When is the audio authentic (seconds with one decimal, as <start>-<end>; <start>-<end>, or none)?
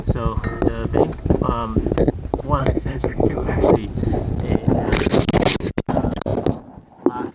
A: 0.0-2.6; 3.7-7.3